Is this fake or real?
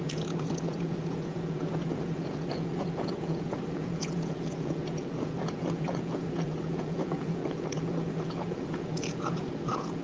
fake